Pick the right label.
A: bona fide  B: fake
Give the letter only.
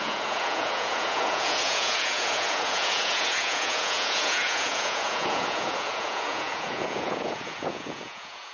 B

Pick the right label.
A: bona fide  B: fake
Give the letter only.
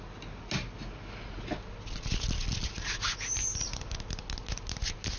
A